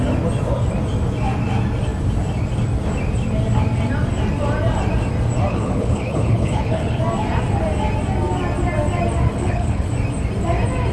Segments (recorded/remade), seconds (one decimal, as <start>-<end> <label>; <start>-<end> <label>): 0.0-5.5 recorded; 5.5-7.0 remade; 7.0-9.3 recorded; 9.3-9.9 remade; 9.9-10.9 recorded